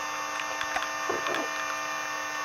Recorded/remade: recorded